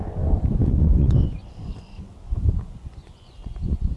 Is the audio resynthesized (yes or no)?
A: yes